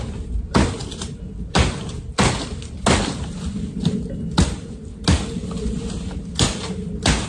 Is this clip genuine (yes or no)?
yes